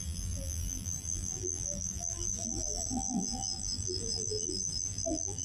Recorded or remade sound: remade